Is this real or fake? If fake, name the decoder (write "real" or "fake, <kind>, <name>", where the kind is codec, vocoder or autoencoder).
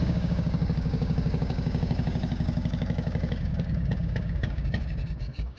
fake, codec, DAC